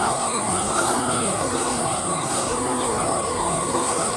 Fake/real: fake